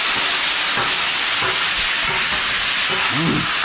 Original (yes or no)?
yes